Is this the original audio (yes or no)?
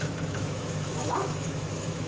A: no